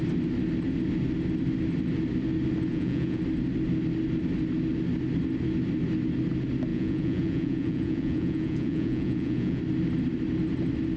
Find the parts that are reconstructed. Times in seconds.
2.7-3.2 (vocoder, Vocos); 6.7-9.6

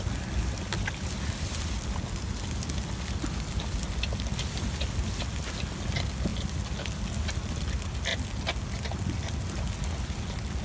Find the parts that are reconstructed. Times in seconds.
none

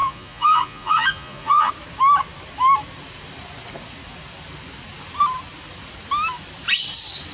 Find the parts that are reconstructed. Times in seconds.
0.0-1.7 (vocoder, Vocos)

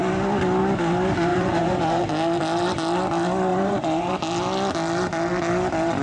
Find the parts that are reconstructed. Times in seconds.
1.3-2.0 (vocoder, Vocos); 3.5-4.1

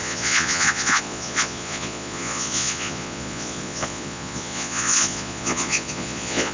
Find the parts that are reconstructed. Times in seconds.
0.0-6.5 (vocoder, Vocos)

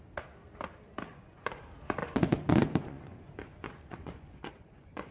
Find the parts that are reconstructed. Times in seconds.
1.1-1.6 (vocoder, Vocos); 2.0-5.1

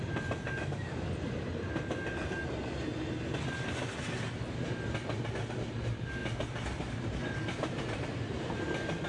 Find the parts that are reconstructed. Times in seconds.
none